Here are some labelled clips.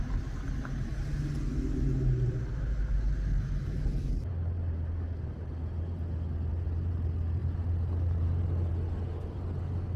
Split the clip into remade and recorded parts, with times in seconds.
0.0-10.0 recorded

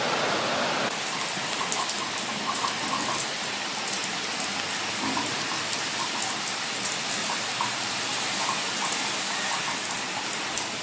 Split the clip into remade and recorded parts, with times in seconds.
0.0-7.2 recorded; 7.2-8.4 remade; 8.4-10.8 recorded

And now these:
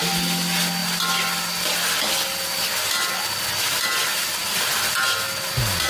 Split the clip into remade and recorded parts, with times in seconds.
0.0-5.9 recorded

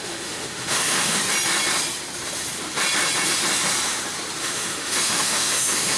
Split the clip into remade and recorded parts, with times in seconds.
0.0-1.2 remade; 1.2-4.4 recorded; 4.4-6.0 remade

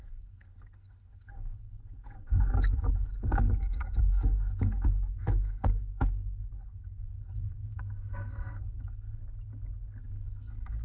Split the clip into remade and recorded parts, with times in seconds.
0.0-9.2 remade; 9.2-10.0 recorded; 10.0-10.8 remade